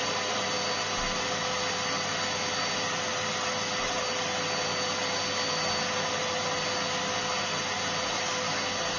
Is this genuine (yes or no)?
yes